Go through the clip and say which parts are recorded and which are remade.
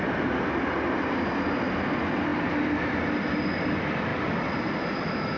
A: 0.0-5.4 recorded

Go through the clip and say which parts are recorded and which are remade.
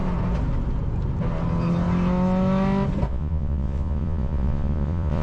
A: 0.0-3.1 recorded; 3.1-5.2 remade